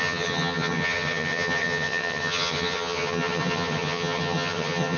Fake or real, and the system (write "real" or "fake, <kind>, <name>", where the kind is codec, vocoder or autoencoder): fake, vocoder, HiFi-GAN